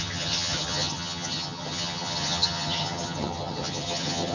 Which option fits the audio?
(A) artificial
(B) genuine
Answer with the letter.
A